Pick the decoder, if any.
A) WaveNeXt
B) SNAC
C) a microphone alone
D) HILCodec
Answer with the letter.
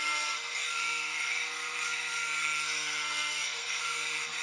B